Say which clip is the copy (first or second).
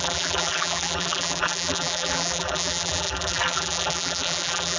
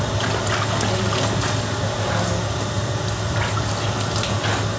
first